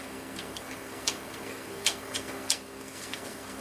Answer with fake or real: fake